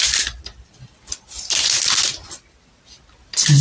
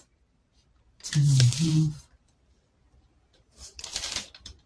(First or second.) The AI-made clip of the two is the second